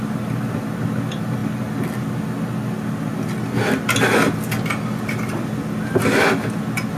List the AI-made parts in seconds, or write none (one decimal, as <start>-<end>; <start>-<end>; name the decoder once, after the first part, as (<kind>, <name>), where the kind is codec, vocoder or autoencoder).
none